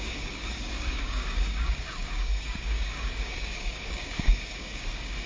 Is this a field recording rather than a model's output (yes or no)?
no